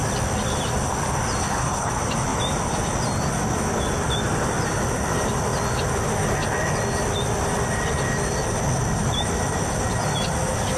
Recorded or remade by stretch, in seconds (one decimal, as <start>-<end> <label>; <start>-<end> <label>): 0.0-1.4 recorded; 1.4-1.9 remade; 1.9-10.8 recorded

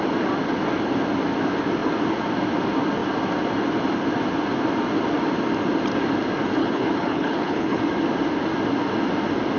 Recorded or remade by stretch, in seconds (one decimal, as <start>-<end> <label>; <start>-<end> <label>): 0.0-6.6 recorded; 6.6-7.8 remade; 7.8-9.6 recorded

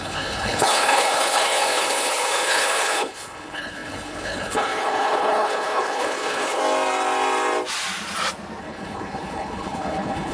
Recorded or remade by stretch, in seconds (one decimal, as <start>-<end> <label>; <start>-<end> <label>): 0.0-6.6 remade; 6.6-8.6 recorded; 8.6-10.3 remade

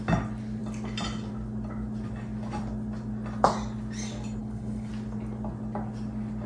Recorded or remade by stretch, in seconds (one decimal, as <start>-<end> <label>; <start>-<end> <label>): 0.0-4.4 recorded; 4.4-4.9 remade; 4.9-6.5 recorded